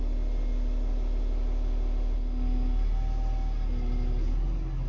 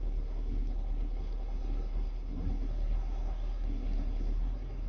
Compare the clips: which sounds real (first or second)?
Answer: first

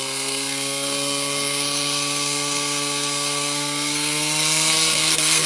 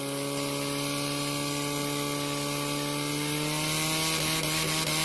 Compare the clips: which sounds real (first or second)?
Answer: second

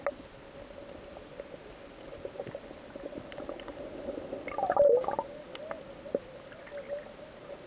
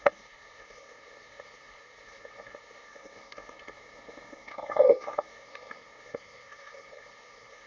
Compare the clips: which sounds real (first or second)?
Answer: first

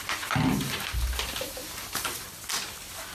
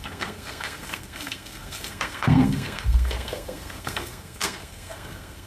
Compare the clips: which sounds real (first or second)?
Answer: first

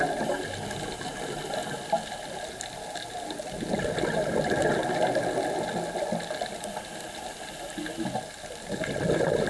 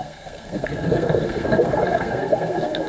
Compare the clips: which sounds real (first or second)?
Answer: first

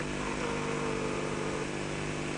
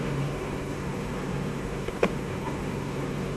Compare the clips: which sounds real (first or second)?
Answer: first